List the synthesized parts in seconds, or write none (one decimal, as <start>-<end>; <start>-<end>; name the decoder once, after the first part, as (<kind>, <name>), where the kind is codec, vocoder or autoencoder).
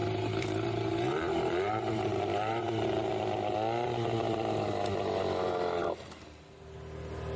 0.0-3.1 (vocoder, BigVGAN v2)